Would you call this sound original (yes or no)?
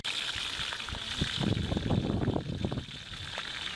no